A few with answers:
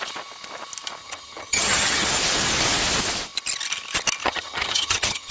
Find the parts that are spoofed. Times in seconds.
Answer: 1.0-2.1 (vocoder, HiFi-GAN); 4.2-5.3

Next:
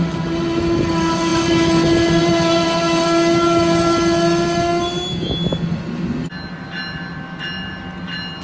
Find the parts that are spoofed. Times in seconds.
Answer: none

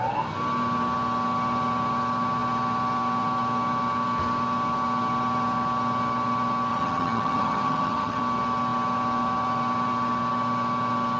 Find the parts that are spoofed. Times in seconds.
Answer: 6.7-8.2 (vocoder, HiFi-GAN)

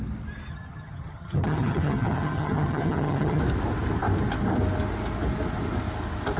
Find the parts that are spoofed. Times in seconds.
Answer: 0.5-3.4 (vocoder, HiFi-GAN)